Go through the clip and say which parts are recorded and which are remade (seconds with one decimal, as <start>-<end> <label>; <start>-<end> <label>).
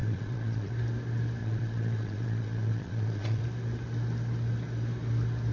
0.0-0.7 remade; 0.7-1.4 recorded; 1.4-3.4 remade; 3.4-5.5 recorded